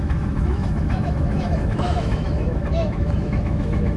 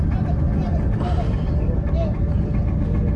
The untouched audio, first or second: second